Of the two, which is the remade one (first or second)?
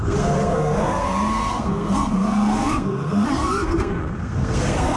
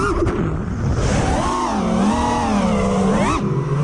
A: first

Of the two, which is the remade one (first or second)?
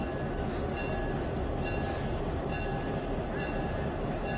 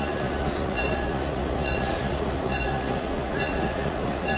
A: second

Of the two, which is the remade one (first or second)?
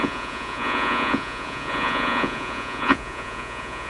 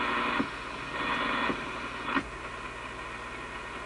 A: first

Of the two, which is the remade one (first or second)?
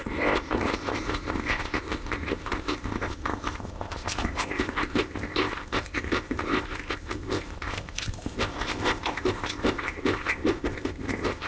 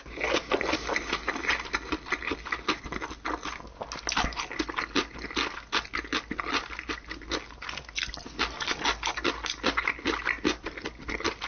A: first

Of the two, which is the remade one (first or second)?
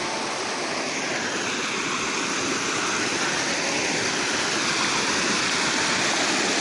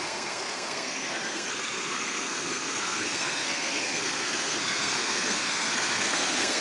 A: second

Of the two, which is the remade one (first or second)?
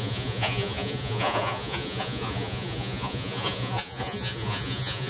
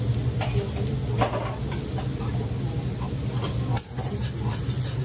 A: first